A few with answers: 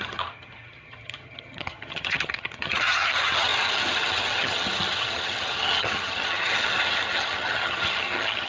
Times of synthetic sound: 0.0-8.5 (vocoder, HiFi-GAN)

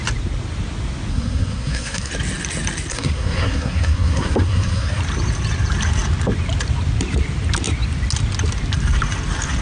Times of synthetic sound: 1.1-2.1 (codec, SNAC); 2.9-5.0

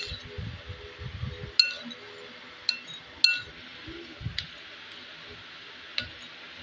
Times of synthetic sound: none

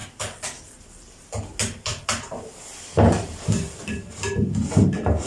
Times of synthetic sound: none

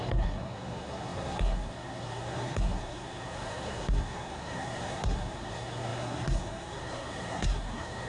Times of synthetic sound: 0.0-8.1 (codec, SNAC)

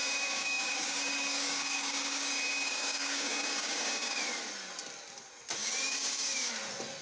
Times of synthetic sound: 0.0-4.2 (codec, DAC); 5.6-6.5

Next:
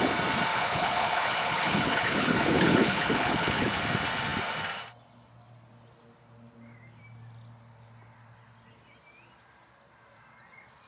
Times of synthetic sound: 0.5-3.8 (codec, HILCodec)